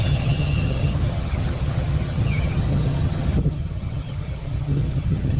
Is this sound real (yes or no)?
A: no